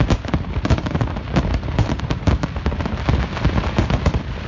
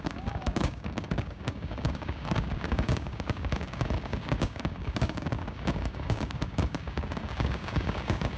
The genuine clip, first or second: first